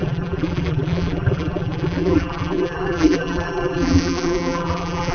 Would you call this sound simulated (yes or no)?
yes